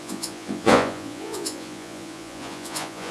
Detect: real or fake fake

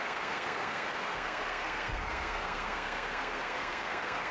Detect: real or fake fake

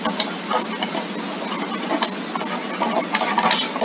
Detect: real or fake real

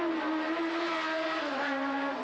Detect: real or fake real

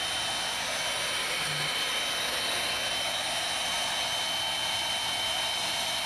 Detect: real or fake real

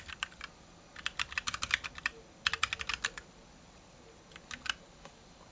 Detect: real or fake real